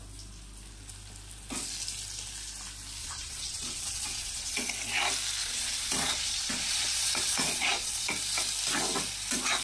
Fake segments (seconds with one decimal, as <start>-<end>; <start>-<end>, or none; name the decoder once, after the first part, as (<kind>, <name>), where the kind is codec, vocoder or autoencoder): 3.0-4.7 (vocoder, Vocos); 5.4-8.1